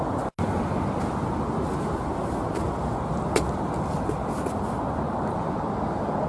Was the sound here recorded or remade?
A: recorded